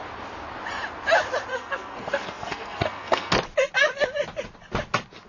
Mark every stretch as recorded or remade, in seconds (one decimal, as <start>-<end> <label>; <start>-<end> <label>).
0.0-1.5 recorded; 1.5-3.3 remade; 3.3-5.3 recorded